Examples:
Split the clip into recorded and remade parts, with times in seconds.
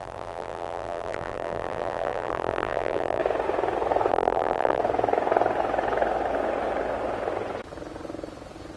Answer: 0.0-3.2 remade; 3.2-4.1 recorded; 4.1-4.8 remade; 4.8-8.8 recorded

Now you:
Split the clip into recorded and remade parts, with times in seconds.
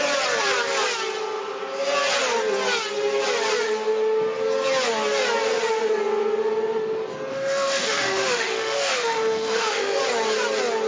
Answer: 0.0-7.3 recorded; 7.3-10.0 remade; 10.0-10.9 recorded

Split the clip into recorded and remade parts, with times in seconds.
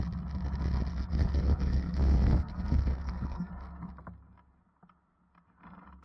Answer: 0.0-0.9 recorded; 0.9-3.5 remade; 3.5-6.0 recorded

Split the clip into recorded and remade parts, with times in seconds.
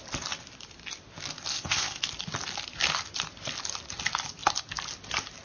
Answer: 0.0-1.5 recorded; 1.5-2.0 remade; 2.0-5.4 recorded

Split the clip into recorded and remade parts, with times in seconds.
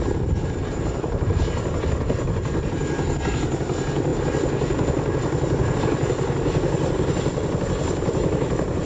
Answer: 0.0-8.9 recorded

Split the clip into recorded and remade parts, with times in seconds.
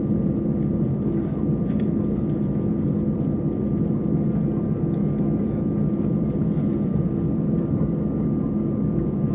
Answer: 0.0-0.9 recorded; 0.9-1.6 remade; 1.6-6.9 recorded; 6.9-9.3 remade